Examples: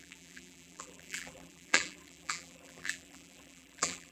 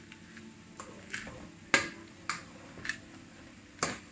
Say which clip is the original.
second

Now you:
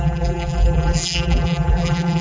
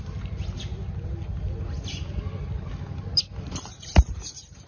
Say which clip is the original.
second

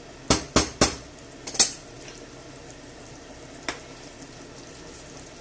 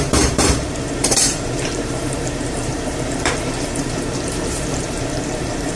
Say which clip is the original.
first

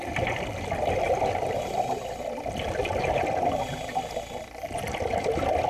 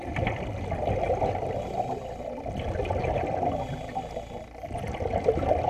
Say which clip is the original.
second